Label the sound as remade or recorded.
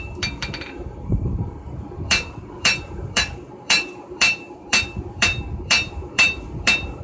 remade